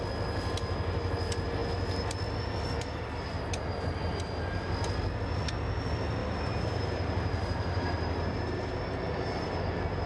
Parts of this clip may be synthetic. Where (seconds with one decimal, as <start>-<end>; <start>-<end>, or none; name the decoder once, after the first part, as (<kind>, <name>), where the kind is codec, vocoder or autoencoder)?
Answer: 6.2-9.6 (vocoder, BigVGAN v2)